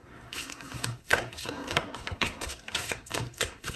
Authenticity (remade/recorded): remade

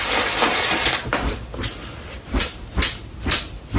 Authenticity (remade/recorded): recorded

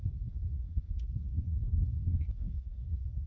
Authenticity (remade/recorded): remade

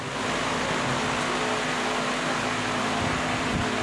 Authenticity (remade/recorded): recorded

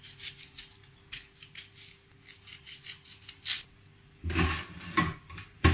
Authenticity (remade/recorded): recorded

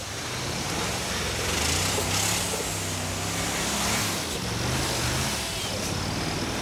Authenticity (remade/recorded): recorded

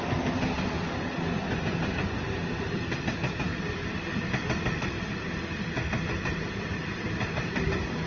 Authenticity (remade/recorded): recorded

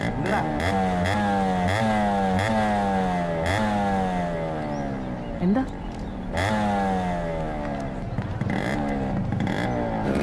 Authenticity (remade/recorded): recorded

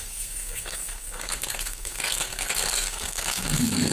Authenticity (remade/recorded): remade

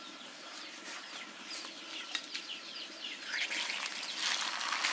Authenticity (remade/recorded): recorded